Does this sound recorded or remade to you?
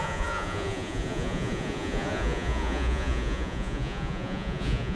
remade